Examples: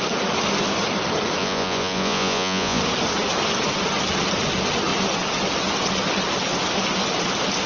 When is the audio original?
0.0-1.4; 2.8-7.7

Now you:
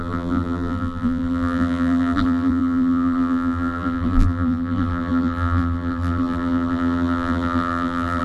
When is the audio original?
none